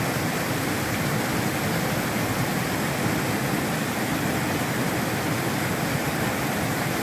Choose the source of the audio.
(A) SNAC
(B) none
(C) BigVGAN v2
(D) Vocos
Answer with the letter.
B